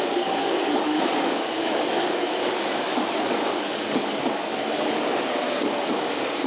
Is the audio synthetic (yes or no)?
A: yes